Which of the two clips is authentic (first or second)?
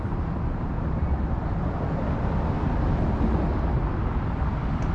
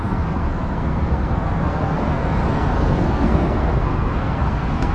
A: first